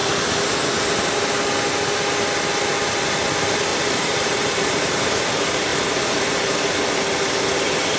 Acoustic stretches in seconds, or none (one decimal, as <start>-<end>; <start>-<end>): 0.0-3.7; 5.1-5.7; 6.7-8.0